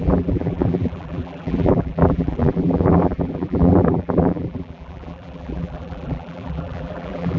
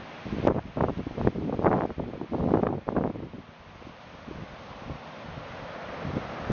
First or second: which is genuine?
second